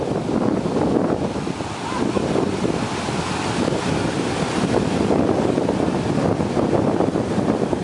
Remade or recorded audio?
remade